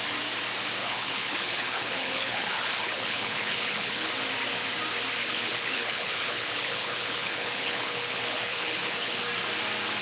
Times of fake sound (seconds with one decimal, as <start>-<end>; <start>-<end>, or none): 0.8-4.1; 5.2-9.2

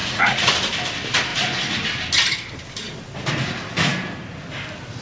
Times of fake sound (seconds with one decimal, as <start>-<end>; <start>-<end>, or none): 0.0-0.5

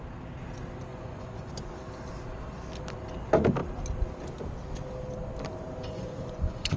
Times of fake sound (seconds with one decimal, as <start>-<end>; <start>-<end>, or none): 0.9-1.5; 5.8-6.8

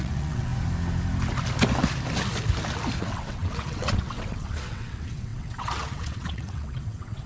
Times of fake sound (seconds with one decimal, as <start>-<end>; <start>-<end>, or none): 0.0-0.5; 3.0-7.3